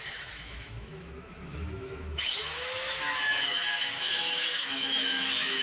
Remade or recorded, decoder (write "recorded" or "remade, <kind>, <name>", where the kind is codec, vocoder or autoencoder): remade, autoencoder, DAC-VAE